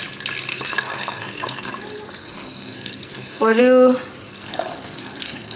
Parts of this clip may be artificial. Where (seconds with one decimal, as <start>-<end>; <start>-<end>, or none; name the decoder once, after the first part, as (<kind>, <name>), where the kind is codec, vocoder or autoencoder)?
0.5-1.7 (codec, SNAC); 2.2-3.6; 4.2-5.6